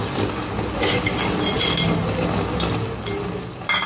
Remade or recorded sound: recorded